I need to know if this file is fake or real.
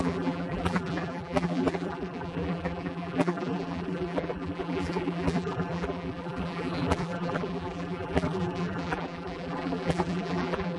fake